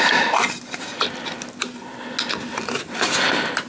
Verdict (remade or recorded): recorded